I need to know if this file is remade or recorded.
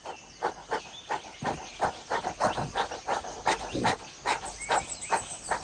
recorded